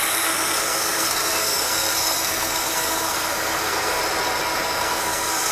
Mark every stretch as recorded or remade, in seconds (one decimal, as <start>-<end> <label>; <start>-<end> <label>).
0.0-4.0 remade; 4.0-4.6 recorded; 4.6-5.5 remade